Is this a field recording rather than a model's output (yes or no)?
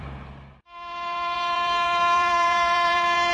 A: no